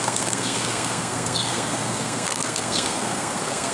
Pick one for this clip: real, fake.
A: fake